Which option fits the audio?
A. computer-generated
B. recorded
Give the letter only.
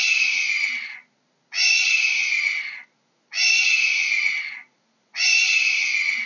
B